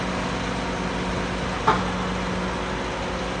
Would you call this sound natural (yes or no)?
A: yes